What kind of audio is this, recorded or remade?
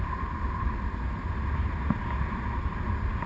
recorded